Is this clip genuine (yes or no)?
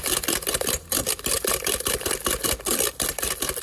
yes